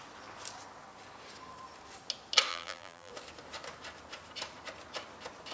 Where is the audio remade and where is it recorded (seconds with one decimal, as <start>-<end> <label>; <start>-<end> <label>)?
0.0-2.5 recorded; 2.5-3.1 remade; 3.1-5.5 recorded